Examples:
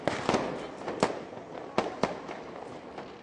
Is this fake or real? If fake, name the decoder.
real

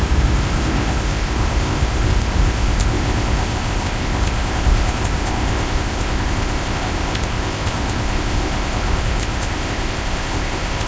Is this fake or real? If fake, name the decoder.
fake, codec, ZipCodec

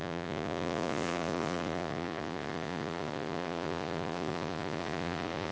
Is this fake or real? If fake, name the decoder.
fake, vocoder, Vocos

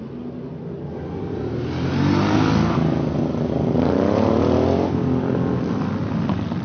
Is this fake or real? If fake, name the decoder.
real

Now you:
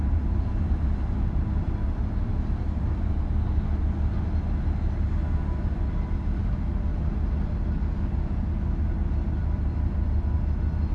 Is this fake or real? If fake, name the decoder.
real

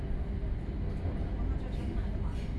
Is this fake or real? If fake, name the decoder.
real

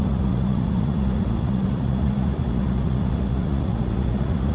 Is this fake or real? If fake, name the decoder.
fake, vocoder, Vocos